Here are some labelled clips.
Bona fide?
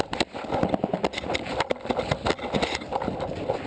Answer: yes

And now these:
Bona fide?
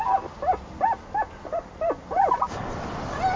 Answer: yes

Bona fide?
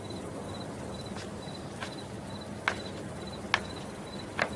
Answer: yes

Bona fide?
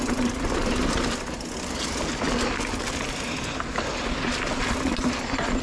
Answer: yes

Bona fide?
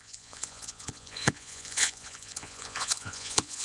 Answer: no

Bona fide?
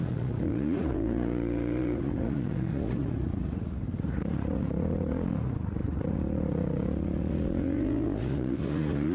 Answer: no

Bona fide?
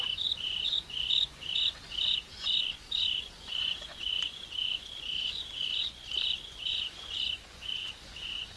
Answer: no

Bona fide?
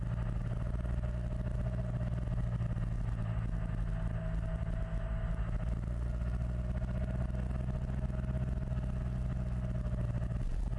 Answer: yes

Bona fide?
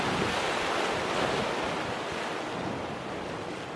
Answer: yes